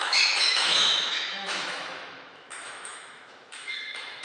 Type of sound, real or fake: fake